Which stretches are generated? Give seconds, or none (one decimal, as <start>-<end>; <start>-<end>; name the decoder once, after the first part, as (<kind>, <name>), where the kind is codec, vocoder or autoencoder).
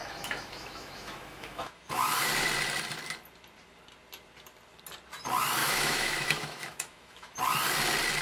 0.0-2.0 (autoencoder, DAC-VAE); 5.6-7.4